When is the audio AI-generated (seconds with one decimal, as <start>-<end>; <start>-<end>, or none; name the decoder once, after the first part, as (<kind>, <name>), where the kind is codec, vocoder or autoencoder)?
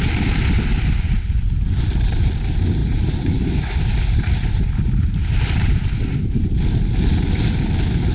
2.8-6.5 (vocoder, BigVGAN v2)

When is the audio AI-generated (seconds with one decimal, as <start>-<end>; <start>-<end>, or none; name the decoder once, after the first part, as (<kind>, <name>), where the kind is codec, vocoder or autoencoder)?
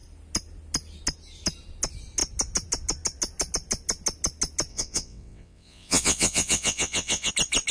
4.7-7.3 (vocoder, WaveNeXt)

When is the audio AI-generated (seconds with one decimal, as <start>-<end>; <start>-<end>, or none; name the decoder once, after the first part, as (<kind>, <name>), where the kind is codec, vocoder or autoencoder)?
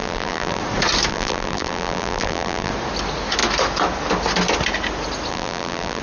0.0-0.6 (vocoder, BigVGAN v2); 1.1-2.7; 5.3-6.0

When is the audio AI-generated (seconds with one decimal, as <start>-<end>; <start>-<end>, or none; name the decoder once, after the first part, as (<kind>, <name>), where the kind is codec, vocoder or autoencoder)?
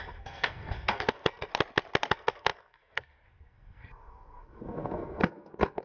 0.0-1.5 (codec, SNAC); 2.1-5.8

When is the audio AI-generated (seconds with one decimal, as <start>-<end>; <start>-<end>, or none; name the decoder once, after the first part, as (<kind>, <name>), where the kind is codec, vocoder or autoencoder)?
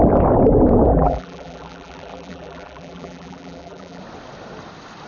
0.9-4.0 (vocoder, BigVGAN v2)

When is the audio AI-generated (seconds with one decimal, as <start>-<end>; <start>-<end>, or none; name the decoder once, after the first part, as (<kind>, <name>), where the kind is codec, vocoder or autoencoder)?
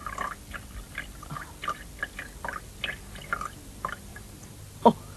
4.1-4.6 (vocoder, BigVGAN v2)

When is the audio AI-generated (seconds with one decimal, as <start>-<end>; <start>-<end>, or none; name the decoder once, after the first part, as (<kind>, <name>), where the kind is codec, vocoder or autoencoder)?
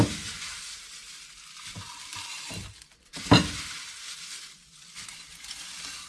none